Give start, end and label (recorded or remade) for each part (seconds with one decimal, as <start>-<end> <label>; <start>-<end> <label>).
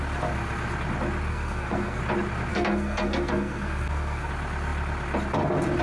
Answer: 0.0-1.3 recorded; 1.3-2.0 remade; 2.0-2.5 recorded; 2.5-4.3 remade; 4.3-5.8 recorded